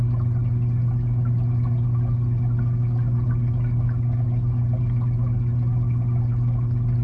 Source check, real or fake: real